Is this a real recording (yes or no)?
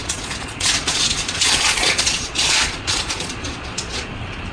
no